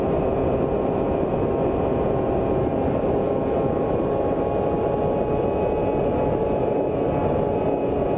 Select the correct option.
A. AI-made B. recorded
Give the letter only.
B